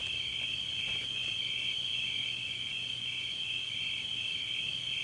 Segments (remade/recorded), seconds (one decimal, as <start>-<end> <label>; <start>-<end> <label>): 0.0-0.7 recorded; 0.7-3.7 remade; 3.7-5.0 recorded